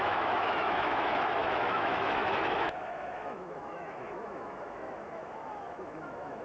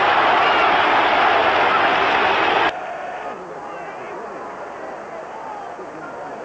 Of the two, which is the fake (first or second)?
first